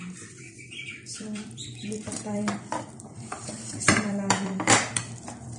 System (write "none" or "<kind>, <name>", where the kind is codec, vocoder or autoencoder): vocoder, BigVGAN v2